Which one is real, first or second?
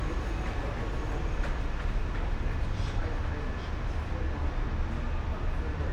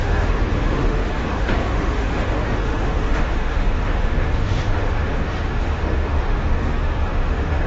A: first